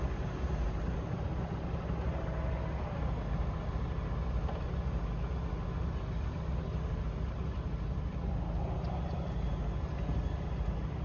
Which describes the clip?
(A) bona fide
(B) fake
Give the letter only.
A